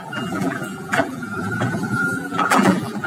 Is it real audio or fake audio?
fake